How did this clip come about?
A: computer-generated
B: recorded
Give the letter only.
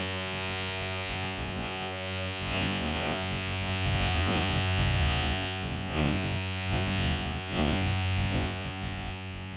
A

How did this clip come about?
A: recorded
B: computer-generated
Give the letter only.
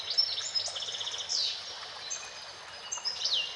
A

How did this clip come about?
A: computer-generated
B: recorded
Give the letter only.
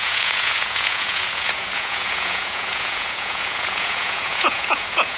A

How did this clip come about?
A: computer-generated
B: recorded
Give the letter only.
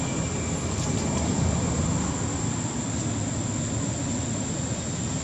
B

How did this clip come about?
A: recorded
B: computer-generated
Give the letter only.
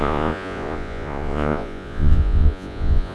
B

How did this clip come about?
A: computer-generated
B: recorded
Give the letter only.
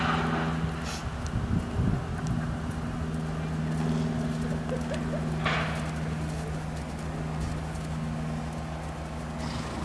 B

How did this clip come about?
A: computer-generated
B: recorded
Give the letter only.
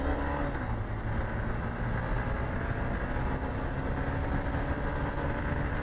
B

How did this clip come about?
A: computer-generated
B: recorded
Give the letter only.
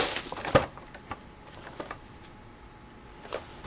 B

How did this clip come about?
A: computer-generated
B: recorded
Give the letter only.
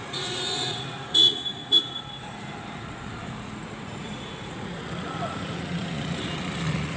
A